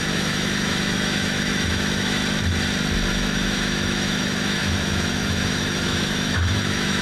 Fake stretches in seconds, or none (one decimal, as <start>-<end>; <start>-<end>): 0.0-2.2; 3.1-7.0